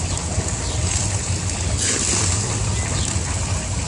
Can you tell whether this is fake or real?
real